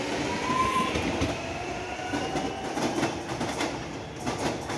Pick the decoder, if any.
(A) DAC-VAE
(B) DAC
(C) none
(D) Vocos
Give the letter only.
C